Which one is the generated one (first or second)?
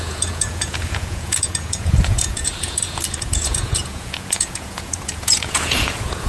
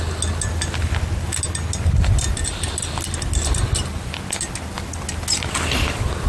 first